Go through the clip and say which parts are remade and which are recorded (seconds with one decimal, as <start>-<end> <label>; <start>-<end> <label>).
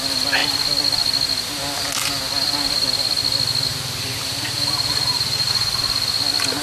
0.0-3.7 recorded; 3.7-5.8 remade; 5.8-6.6 recorded